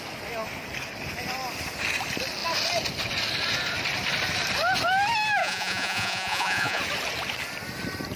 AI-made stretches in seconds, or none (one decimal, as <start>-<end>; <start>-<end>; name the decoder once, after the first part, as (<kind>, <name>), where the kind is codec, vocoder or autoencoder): 5.4-6.8 (vocoder, Vocos)